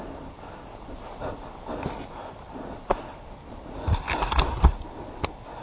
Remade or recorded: recorded